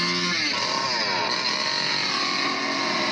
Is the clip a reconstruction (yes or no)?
no